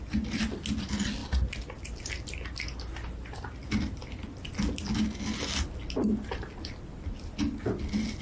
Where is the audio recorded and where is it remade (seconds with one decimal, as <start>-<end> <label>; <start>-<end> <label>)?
0.0-8.2 recorded